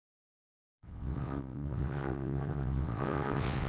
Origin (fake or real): fake